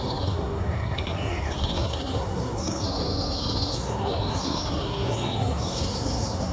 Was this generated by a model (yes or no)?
yes